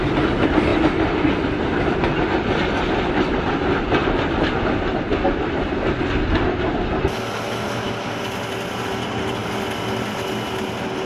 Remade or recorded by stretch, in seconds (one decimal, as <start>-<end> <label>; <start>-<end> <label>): 0.0-11.1 recorded